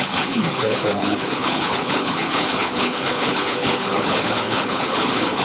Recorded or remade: remade